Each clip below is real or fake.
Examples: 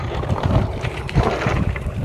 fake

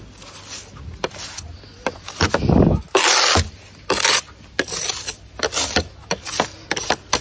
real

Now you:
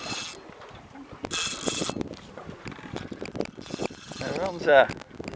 real